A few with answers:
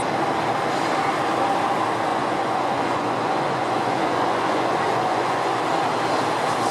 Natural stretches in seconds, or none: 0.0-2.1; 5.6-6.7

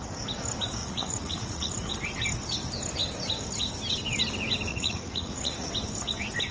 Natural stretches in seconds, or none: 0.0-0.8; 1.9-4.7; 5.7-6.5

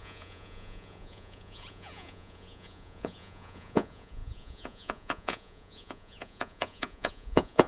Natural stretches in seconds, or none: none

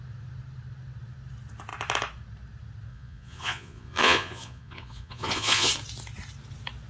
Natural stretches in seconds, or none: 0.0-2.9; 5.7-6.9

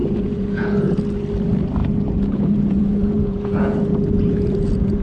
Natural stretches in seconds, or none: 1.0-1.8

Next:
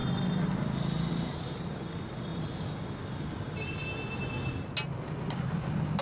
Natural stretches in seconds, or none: 0.0-6.0

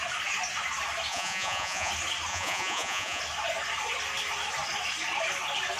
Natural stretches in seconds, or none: 0.0-1.1; 1.9-2.3; 3.2-5.8

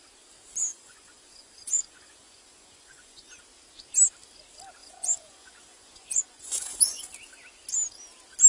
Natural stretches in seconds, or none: 0.0-0.7; 3.4-4.8; 7.1-8.5